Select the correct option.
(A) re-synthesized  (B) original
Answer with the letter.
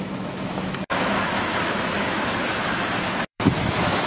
A